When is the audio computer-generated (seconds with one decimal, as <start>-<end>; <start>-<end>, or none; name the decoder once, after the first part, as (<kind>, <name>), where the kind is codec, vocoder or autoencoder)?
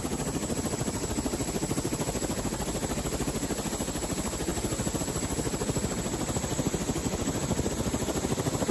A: none